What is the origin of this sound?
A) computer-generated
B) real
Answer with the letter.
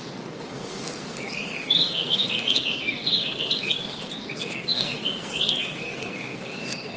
A